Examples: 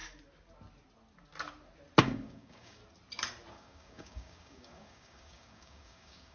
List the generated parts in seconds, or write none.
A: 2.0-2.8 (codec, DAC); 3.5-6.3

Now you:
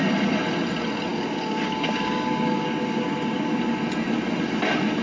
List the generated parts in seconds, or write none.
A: 1.1-3.6 (codec, DAC)

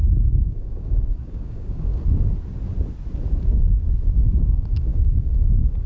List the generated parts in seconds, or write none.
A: 0.0-1.9 (codec, DAC); 4.2-5.9

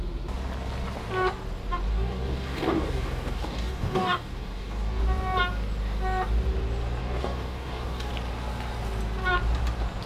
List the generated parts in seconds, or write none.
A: 1.9-5.0 (codec, DAC); 7.0-8.1

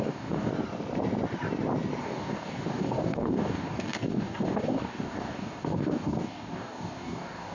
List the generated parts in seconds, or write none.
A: 0.0-0.5 (codec, DAC); 2.0-7.5